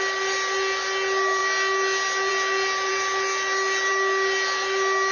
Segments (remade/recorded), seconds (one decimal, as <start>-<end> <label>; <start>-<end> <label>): 0.0-5.1 recorded